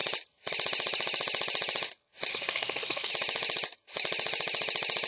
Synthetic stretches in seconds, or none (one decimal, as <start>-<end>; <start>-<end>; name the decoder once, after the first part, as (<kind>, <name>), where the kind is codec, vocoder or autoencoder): 2.3-3.1 (codec, SNAC)